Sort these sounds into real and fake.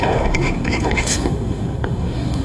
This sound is fake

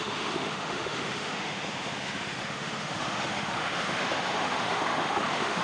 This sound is fake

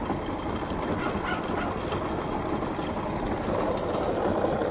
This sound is real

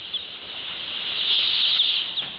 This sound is real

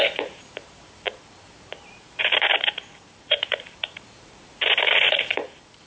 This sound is fake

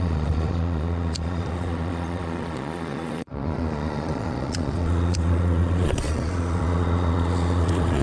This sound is fake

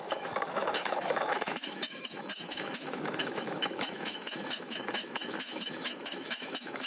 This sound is fake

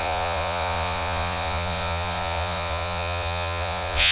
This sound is fake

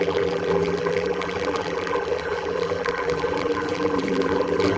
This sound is fake